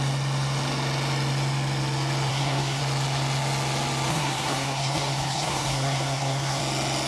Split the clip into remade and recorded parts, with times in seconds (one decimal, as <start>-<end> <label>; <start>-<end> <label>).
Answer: 0.0-2.3 recorded; 2.3-2.8 remade; 2.8-4.1 recorded; 4.1-6.6 remade; 6.6-7.1 recorded